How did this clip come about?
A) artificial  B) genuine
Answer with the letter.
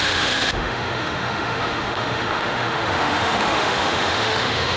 A